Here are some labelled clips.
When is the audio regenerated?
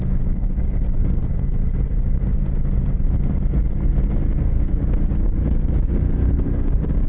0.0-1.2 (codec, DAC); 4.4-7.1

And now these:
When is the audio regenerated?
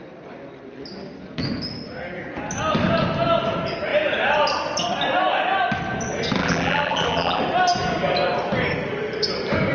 6.4-7.4 (vocoder, BigVGAN v2)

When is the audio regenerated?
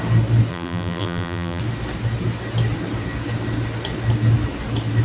0.5-1.6 (vocoder, BigVGAN v2)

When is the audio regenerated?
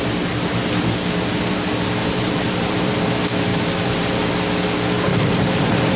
2.0-2.9 (vocoder, BigVGAN v2); 3.5-4.3; 5.1-6.0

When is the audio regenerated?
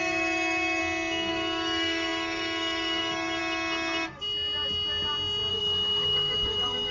0.0-0.8 (codec, DAC); 1.3-3.4; 5.5-6.9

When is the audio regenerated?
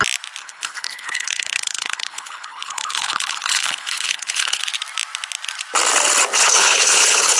0.4-4.6 (codec, HILCodec); 6.4-7.4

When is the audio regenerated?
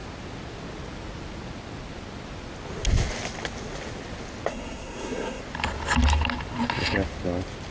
4.5-5.4 (codec, SNAC)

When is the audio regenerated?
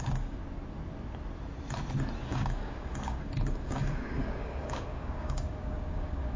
0.0-0.4 (codec, DAC); 2.2-6.4